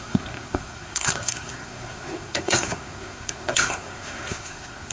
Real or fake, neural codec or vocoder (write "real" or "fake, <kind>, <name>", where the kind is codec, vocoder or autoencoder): fake, codec, SNAC